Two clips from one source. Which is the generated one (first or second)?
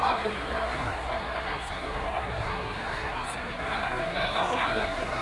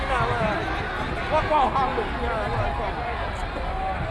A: first